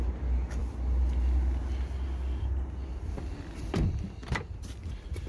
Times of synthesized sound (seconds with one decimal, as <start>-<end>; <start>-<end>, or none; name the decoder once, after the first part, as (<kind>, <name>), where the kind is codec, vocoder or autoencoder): none